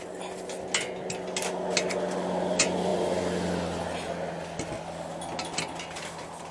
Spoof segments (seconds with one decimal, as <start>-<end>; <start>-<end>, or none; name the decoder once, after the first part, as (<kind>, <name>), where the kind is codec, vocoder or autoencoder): none